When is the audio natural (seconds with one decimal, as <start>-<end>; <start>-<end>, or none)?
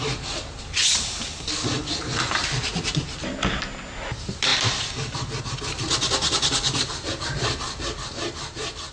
0.0-8.9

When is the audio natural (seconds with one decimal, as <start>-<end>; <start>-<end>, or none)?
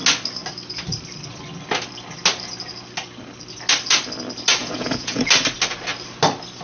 0.0-4.6; 5.3-6.6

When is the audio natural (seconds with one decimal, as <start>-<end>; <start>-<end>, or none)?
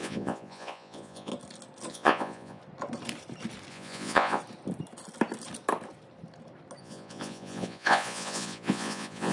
1.3-1.9; 2.6-3.7; 4.4-6.8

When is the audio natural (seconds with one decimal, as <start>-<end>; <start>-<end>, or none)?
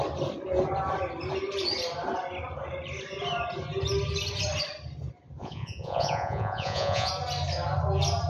0.0-5.4; 7.1-8.3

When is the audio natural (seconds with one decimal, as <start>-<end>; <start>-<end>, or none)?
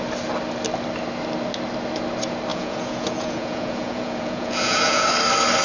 0.0-2.5; 5.1-5.6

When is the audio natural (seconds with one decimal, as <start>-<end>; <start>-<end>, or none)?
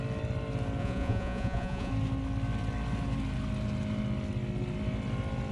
0.0-0.8; 1.9-5.5